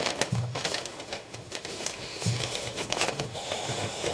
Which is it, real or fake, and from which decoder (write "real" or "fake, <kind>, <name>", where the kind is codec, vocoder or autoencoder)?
fake, autoencoder, DAC-VAE